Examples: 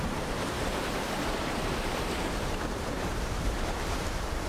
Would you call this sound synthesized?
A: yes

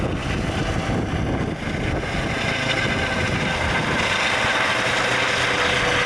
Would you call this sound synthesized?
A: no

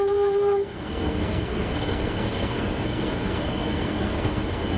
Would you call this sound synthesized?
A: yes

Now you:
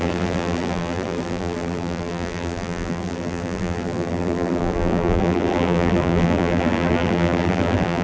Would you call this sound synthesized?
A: yes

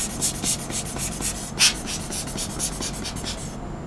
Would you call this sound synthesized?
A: no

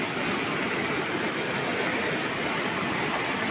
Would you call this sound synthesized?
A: yes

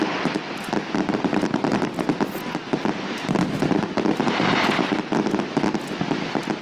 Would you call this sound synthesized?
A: no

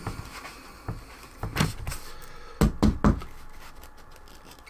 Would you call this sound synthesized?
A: no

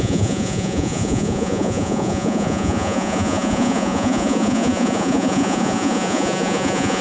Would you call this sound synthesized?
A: yes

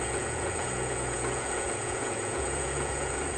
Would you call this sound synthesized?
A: yes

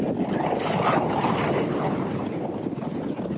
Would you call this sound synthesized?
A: no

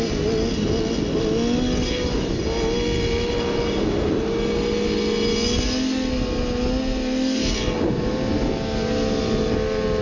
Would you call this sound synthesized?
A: no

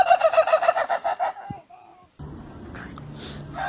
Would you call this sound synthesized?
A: no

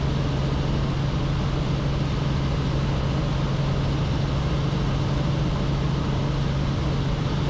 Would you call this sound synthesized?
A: no